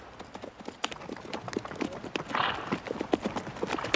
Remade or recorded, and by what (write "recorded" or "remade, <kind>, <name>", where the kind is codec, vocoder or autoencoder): recorded